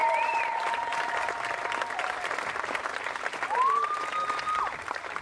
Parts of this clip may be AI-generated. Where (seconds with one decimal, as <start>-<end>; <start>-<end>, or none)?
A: 0.0-1.1